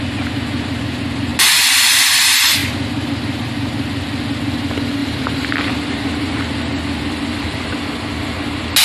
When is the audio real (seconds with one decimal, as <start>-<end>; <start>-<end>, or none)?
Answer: 0.0-5.0; 7.8-8.8